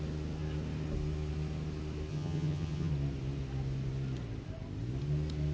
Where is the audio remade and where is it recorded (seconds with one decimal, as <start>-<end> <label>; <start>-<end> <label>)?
0.0-2.1 recorded; 2.1-2.9 remade; 2.9-5.5 recorded